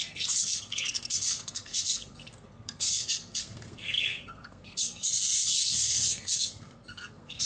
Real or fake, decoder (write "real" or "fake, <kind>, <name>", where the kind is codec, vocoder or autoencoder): fake, codec, SNAC